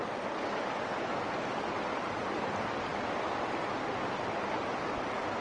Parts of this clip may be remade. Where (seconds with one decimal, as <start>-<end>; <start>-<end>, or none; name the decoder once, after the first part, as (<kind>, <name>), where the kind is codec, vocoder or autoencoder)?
none